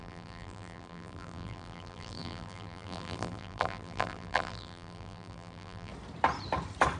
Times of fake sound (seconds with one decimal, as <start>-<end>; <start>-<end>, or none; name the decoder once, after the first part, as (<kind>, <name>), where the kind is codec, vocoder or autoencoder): 0.0-5.9 (vocoder, BigVGAN v2)